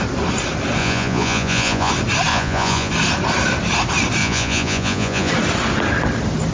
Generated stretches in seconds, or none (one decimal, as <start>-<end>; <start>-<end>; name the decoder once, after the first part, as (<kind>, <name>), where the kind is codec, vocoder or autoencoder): 0.8-1.9 (vocoder, Vocos); 2.3-2.9; 4.2-5.3